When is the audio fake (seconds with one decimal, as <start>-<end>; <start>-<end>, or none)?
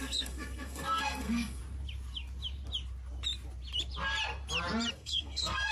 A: 0.0-1.6; 4.9-5.7